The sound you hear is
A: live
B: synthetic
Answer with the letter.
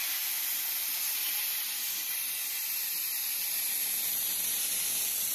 A